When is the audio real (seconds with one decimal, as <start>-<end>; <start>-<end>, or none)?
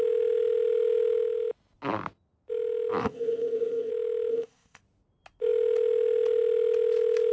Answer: 0.0-3.0; 3.9-4.3; 4.8-7.3